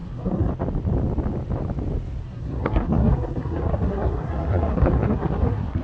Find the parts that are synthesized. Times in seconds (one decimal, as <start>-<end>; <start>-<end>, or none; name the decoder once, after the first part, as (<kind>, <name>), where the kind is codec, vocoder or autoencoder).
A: 0.0-0.5 (codec, SNAC); 2.2-5.8